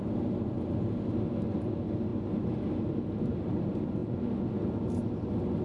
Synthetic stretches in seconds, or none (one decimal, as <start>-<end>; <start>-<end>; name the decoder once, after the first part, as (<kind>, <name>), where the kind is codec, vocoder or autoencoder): none